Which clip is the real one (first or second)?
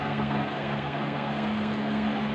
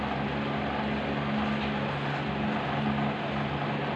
second